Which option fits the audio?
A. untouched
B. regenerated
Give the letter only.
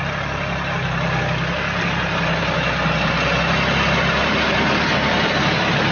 A